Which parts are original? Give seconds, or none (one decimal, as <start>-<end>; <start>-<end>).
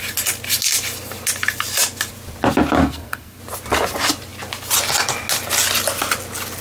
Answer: 0.0-2.8; 3.4-6.6